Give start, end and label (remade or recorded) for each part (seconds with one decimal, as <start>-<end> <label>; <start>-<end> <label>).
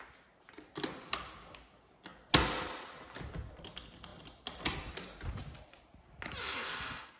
0.0-6.4 recorded; 6.4-7.2 remade